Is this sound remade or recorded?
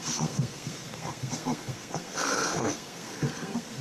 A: remade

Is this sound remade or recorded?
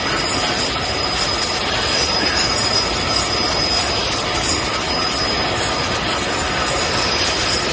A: recorded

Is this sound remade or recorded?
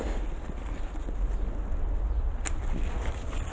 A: recorded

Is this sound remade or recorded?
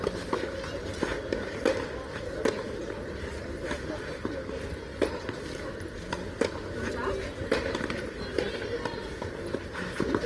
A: recorded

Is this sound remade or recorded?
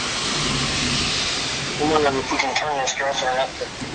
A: recorded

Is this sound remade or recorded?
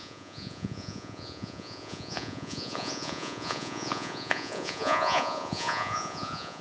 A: remade